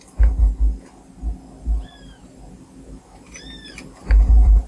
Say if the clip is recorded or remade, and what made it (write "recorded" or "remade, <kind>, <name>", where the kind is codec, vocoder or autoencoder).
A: recorded